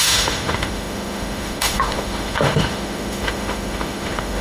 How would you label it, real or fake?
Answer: fake